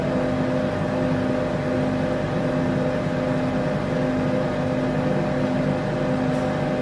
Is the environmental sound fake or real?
real